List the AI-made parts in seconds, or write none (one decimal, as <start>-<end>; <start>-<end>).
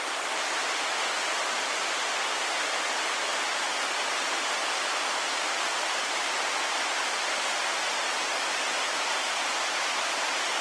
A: none